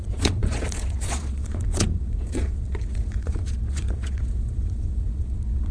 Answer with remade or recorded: remade